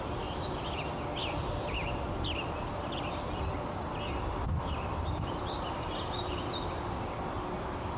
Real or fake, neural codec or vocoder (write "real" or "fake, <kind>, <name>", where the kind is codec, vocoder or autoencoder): real